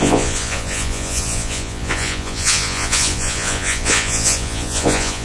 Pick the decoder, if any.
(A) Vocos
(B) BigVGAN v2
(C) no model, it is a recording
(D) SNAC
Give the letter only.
A